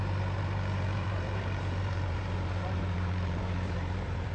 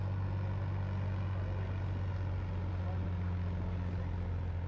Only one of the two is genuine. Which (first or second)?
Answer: second